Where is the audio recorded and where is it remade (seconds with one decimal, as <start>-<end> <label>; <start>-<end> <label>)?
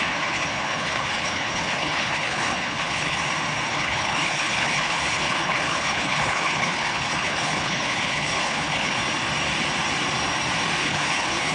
0.0-3.2 remade; 3.2-3.7 recorded; 3.7-9.0 remade; 9.0-10.8 recorded; 10.8-11.5 remade